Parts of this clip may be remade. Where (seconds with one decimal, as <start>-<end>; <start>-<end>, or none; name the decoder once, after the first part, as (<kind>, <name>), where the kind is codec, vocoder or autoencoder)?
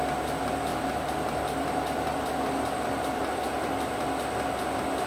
0.7-3.8 (vocoder, BigVGAN v2)